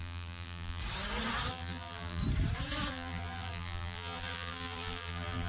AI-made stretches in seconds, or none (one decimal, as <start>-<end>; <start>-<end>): 0.0-0.8; 1.5-2.2; 2.9-5.5